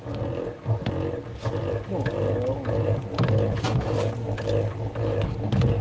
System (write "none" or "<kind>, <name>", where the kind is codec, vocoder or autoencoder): none